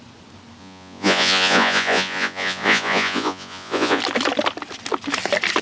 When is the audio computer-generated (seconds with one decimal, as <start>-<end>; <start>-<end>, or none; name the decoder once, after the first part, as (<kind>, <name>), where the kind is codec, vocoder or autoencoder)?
0.6-4.0 (vocoder, Vocos)